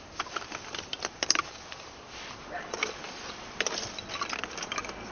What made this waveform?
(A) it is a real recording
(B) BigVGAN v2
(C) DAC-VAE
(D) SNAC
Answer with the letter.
B